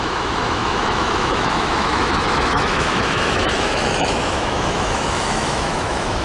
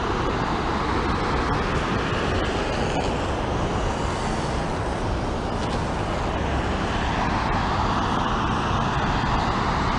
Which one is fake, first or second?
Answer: first